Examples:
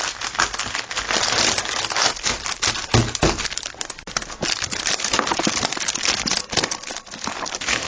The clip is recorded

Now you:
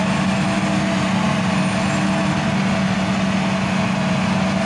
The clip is recorded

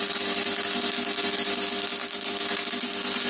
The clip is recorded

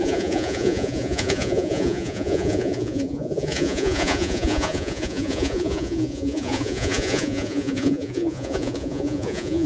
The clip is remade